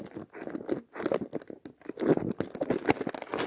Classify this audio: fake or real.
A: real